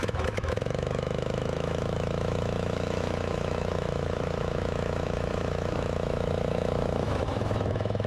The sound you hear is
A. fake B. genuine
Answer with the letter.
A